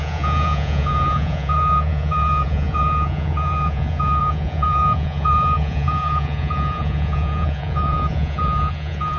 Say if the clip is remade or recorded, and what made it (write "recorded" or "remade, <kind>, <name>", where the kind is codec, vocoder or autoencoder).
remade, vocoder, Vocos